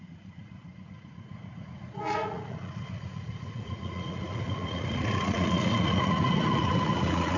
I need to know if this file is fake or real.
fake